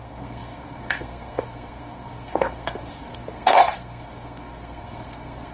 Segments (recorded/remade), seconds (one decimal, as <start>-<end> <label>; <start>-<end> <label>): 0.0-5.5 remade

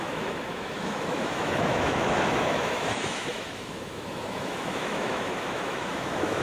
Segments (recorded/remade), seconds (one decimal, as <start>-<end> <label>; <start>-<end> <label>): 0.0-6.4 remade